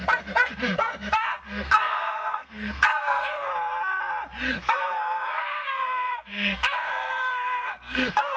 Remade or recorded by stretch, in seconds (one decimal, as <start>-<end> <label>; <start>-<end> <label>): 0.0-3.5 remade; 3.5-4.5 recorded; 4.5-8.4 remade